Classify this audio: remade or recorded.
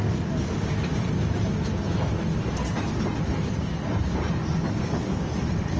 recorded